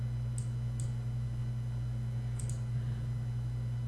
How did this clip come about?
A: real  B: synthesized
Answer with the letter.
A